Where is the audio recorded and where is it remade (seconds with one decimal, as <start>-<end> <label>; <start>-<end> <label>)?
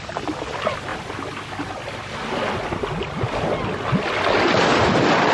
0.0-5.3 recorded